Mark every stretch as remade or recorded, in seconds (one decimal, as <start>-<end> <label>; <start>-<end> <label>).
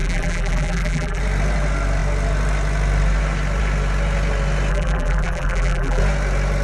0.0-1.2 remade; 1.2-4.7 recorded; 4.7-6.0 remade; 6.0-6.6 recorded